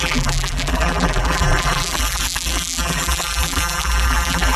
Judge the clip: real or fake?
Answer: fake